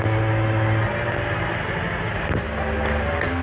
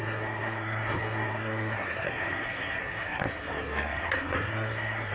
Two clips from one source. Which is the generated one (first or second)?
second